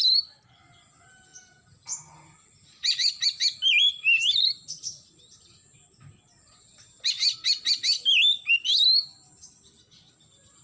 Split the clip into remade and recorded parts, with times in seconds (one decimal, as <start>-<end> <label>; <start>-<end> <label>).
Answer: 0.0-10.6 recorded